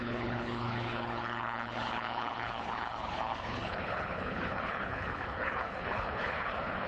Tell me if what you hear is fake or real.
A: fake